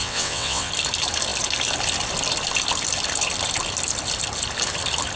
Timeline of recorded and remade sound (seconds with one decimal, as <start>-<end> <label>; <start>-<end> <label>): 0.0-0.7 remade; 0.7-5.2 recorded